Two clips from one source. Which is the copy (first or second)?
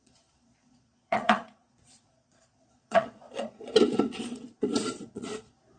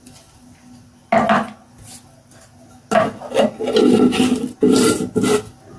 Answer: first